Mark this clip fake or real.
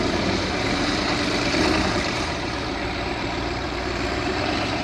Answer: fake